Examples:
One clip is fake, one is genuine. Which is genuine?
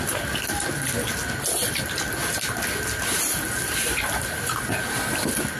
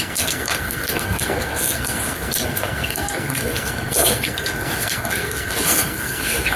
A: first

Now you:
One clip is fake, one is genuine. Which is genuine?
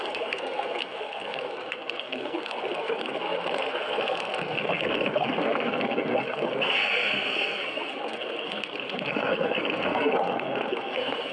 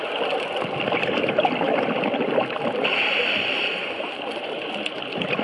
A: second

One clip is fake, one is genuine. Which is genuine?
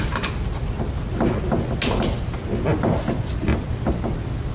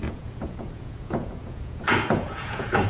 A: first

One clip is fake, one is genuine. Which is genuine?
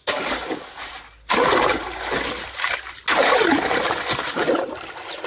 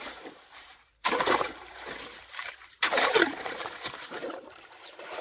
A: first